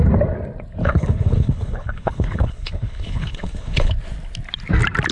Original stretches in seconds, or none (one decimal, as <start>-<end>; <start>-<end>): 0.0-0.8; 3.9-5.1